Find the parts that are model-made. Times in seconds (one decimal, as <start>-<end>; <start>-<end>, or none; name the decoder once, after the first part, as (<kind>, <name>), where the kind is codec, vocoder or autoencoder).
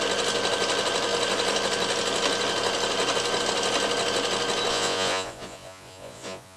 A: 4.7-6.6 (vocoder, Vocos)